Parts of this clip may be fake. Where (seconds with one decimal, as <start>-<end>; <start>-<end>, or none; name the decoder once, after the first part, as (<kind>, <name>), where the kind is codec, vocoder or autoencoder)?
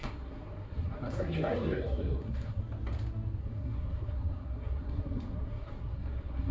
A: 0.0-2.6 (codec, SNAC); 3.4-6.5